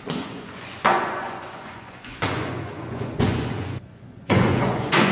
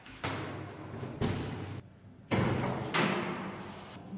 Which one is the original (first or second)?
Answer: second